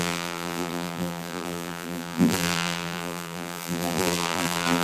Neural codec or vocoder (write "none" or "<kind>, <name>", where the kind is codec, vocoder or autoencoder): vocoder, BigVGAN v2